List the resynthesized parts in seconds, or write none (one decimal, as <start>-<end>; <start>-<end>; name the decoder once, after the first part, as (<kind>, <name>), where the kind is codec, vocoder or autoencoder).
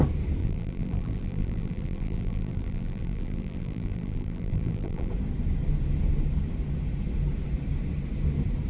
0.4-5.1 (vocoder, BigVGAN v2)